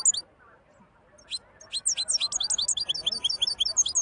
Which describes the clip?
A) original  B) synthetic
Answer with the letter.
A